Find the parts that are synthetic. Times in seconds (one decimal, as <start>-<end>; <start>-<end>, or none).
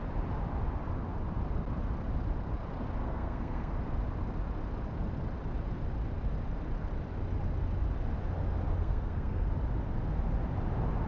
3.0-3.7; 8.8-9.5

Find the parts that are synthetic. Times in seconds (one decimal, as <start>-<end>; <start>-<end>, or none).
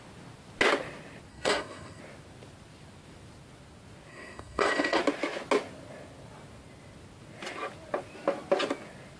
1.3-2.0; 4.1-5.0